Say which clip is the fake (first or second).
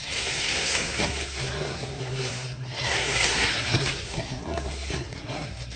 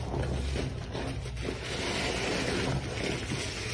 first